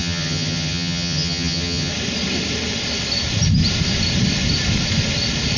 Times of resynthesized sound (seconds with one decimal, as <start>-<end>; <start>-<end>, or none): 0.0-1.9